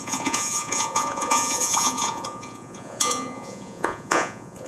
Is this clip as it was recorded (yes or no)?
no